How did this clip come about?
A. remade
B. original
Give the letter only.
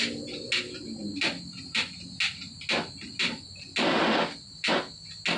B